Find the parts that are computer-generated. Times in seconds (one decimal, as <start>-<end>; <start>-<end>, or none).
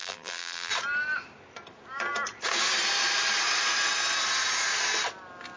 0.0-0.7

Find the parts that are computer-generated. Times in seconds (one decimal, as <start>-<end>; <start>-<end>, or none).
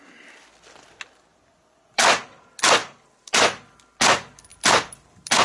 1.3-2.2; 2.8-3.8; 4.5-5.4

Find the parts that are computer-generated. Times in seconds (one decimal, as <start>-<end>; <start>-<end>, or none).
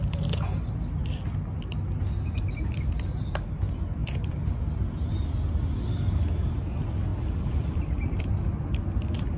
4.0-4.5; 7.1-8.3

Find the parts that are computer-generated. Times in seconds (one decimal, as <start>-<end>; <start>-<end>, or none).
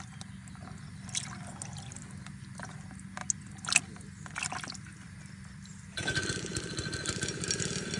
none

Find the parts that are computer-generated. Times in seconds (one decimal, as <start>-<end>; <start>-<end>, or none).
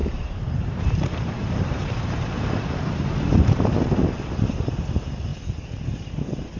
0.0-4.0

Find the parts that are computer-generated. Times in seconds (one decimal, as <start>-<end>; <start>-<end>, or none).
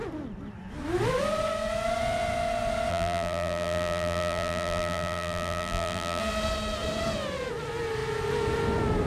2.9-6.2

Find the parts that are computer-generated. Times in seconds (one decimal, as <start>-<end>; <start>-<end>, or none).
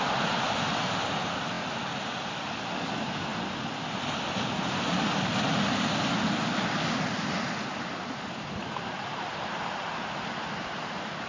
none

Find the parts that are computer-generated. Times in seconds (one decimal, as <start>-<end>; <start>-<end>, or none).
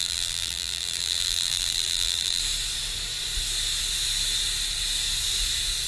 0.0-2.4